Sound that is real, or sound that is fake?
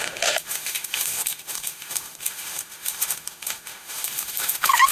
fake